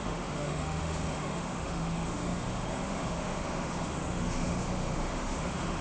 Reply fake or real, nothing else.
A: fake